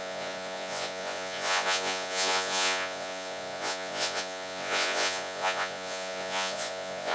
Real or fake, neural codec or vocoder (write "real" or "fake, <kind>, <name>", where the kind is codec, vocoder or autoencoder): fake, vocoder, Vocos